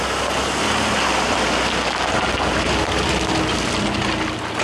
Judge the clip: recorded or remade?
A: recorded